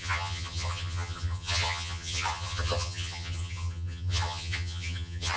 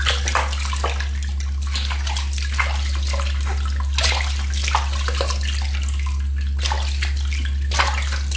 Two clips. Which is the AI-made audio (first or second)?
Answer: first